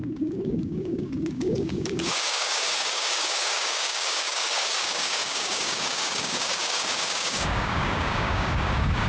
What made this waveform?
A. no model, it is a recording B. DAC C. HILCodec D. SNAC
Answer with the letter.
B